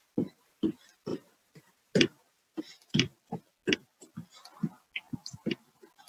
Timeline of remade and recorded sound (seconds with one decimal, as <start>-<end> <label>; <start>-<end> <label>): 0.0-1.1 recorded; 1.1-2.6 remade; 2.6-6.1 recorded